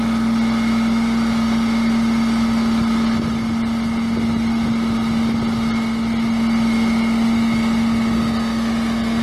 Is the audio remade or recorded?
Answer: recorded